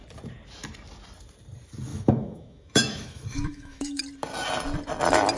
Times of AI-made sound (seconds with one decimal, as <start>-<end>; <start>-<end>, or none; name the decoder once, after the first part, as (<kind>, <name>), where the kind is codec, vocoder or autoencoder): 1.9-4.0 (autoencoder, DAC-VAE)